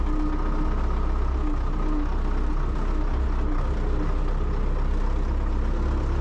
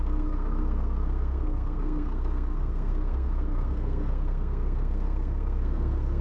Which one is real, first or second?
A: first